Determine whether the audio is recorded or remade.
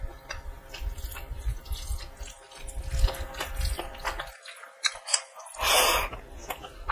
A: recorded